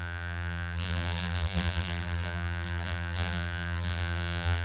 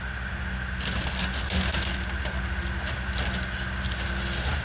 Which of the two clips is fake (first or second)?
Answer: first